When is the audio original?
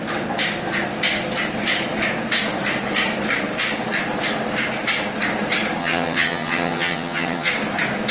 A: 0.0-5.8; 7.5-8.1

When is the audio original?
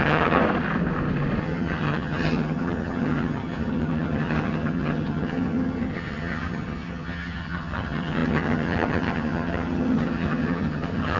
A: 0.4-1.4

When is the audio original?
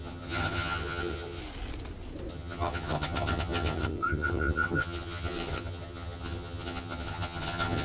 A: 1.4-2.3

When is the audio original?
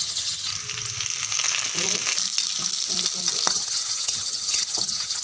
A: 0.5-3.5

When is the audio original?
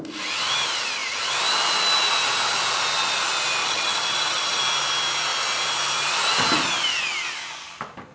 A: 0.0-3.6; 4.6-8.1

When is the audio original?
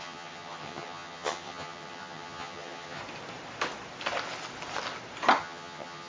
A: 3.0-5.4